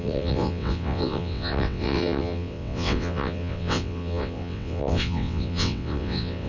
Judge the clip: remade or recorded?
remade